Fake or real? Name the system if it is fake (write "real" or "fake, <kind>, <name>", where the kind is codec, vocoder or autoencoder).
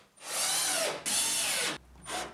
real